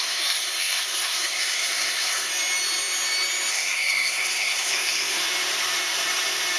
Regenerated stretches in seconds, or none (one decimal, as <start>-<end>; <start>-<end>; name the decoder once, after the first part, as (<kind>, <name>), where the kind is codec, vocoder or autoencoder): 0.0-2.3 (codec, SNAC); 3.5-5.2